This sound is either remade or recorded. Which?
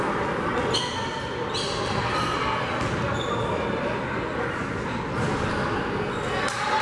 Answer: recorded